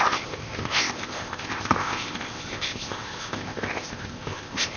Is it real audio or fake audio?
fake